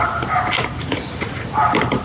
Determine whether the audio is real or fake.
real